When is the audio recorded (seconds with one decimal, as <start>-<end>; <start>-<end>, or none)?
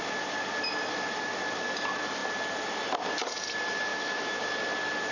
0.0-3.9; 4.4-5.1